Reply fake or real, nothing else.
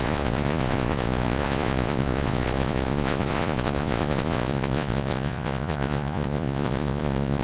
fake